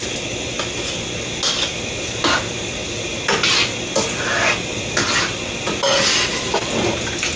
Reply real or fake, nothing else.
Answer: real